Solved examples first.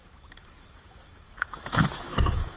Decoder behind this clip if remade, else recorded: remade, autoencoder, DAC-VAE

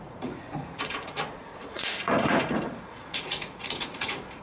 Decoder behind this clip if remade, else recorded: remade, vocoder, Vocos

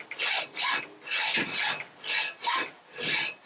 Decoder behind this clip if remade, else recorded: recorded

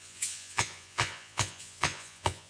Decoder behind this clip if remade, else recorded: remade, vocoder, Vocos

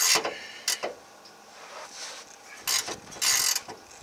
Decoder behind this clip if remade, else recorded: recorded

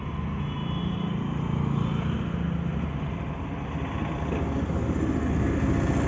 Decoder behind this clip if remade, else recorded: recorded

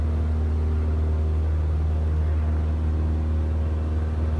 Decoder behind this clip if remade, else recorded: recorded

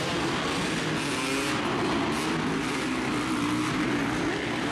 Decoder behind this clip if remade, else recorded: recorded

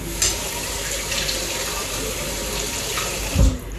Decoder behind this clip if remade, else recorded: recorded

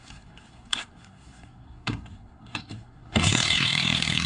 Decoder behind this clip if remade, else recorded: remade, codec, SNAC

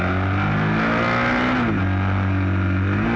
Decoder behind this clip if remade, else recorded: recorded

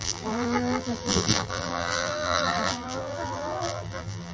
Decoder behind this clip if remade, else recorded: remade, vocoder, BigVGAN v2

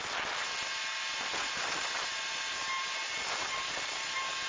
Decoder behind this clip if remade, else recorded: recorded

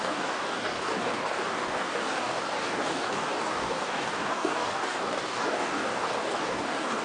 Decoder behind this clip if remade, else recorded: remade, codec, DAC